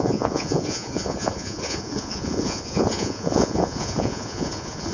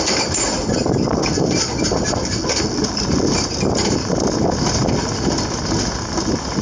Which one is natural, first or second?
second